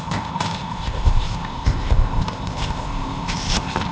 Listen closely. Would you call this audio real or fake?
fake